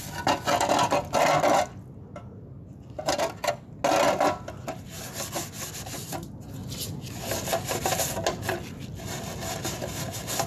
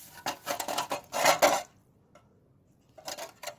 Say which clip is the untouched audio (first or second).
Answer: first